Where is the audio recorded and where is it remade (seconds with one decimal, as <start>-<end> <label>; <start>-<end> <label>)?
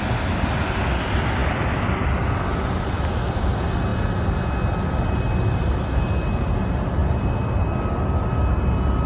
0.0-9.1 recorded